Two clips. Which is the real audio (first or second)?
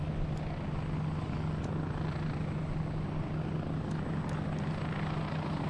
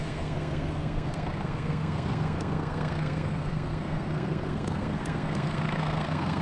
first